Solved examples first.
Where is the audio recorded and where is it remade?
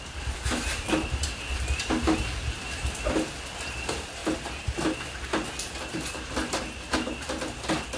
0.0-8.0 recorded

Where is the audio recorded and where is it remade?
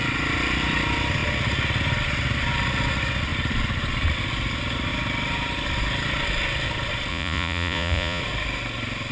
0.0-7.1 recorded; 7.1-8.2 remade; 8.2-9.1 recorded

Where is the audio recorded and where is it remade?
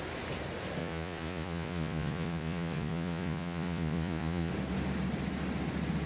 0.0-0.8 recorded; 0.8-4.5 remade; 4.5-6.1 recorded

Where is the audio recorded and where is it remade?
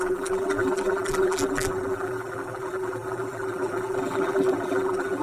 0.0-5.2 remade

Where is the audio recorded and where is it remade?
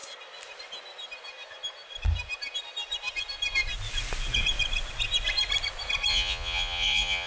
0.0-6.1 recorded; 6.1-7.3 remade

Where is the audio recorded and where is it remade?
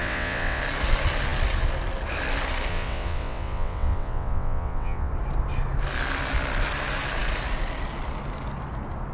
0.0-0.6 remade; 0.6-2.7 recorded; 2.7-5.1 remade; 5.1-9.1 recorded